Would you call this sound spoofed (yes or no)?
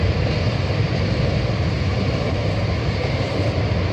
no